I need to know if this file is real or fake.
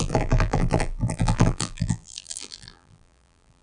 fake